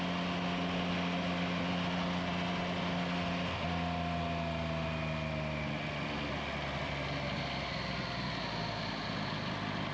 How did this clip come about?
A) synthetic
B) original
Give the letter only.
B